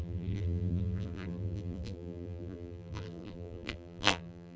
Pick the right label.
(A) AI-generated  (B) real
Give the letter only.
A